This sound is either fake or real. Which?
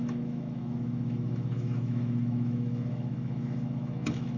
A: fake